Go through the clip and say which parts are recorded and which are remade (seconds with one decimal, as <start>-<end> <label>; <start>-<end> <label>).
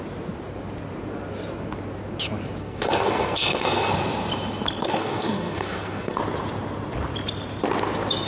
0.0-2.6 recorded; 2.6-3.9 remade; 3.9-4.8 recorded; 4.8-6.2 remade; 6.2-8.3 recorded